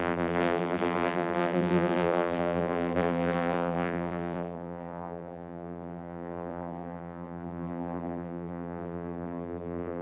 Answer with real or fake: fake